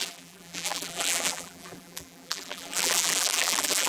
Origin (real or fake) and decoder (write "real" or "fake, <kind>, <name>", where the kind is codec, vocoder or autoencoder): fake, vocoder, BigVGAN v2